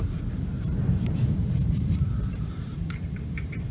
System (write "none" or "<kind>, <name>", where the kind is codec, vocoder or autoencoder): vocoder, BigVGAN v2